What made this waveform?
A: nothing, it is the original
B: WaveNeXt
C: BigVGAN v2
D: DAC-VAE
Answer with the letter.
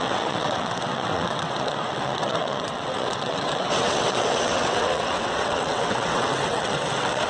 B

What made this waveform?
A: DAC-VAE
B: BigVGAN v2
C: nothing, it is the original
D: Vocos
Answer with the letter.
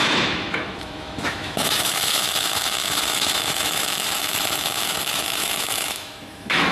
A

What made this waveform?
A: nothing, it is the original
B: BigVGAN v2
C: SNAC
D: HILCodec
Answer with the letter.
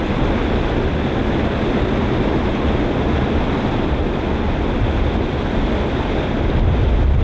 A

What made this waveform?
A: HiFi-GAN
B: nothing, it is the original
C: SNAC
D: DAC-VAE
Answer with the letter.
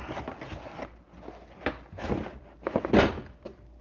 B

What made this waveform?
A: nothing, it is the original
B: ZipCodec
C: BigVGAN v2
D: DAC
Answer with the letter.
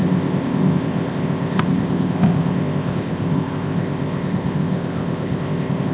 B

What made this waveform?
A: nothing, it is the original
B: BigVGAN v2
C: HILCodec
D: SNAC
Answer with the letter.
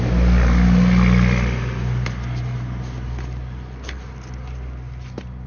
A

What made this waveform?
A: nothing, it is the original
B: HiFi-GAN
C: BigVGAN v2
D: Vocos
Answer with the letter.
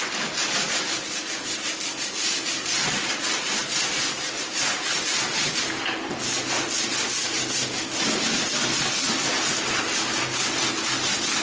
A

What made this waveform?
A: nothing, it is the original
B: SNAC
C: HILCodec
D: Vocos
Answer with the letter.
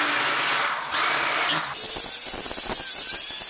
A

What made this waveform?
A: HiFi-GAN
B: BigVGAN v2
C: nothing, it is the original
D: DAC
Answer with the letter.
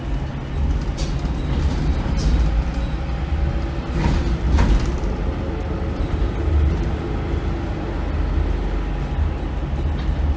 C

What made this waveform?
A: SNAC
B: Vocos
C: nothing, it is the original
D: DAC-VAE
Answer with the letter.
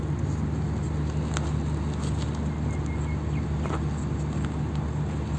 C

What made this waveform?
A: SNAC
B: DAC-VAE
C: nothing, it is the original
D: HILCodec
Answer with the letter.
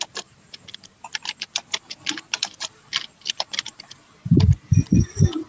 C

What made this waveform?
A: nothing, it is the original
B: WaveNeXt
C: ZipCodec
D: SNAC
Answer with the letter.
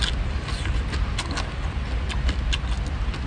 A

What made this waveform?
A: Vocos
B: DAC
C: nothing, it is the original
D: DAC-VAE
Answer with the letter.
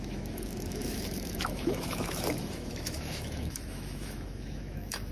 D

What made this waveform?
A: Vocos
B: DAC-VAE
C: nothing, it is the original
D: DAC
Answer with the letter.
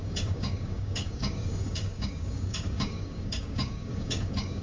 D